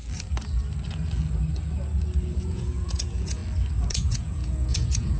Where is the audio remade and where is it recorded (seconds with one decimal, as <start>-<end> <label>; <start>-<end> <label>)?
0.0-2.4 recorded; 2.4-3.4 remade; 3.4-3.9 recorded; 3.9-5.2 remade